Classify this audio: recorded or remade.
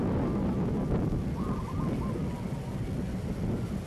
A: recorded